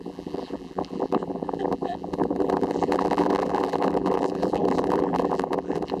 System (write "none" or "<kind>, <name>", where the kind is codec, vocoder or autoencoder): vocoder, BigVGAN v2